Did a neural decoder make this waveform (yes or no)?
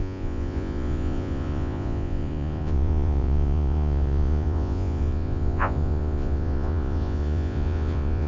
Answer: yes